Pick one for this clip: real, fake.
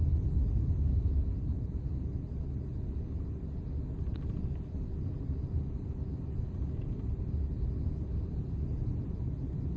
real